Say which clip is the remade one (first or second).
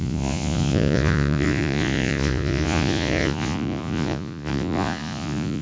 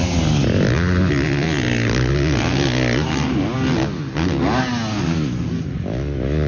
first